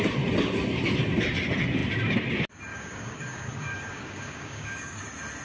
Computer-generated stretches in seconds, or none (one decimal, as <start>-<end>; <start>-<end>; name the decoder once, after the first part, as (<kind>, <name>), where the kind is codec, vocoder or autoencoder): 2.7-5.0 (codec, DAC)